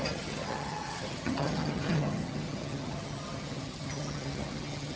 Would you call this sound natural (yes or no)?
no